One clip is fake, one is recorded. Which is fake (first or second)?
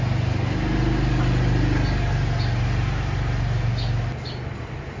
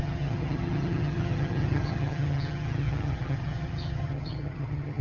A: second